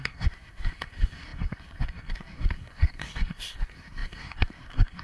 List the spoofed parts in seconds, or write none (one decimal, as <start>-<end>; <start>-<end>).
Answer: 0.0-5.0